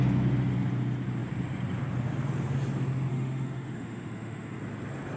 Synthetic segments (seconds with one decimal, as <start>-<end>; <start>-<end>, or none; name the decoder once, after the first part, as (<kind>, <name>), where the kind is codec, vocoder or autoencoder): 3.1-4.6 (autoencoder, DAC-VAE)